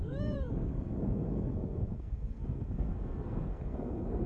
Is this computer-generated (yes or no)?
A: yes